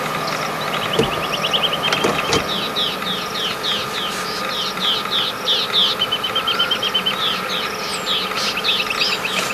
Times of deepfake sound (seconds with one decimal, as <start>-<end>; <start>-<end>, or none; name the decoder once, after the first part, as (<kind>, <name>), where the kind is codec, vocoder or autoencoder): 7.9-9.5 (vocoder, BigVGAN v2)